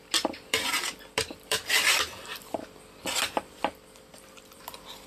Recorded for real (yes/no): no